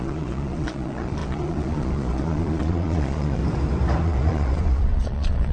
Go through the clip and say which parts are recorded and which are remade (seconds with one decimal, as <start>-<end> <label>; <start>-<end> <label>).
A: 0.0-3.4 remade; 3.4-4.0 recorded; 4.0-5.5 remade